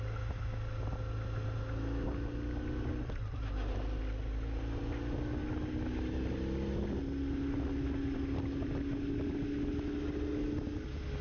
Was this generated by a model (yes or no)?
no